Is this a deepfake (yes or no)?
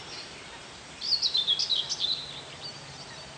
no